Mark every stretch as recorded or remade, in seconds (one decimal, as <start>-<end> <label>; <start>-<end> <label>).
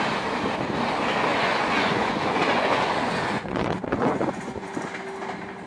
0.0-1.3 recorded; 1.3-4.7 remade; 4.7-5.7 recorded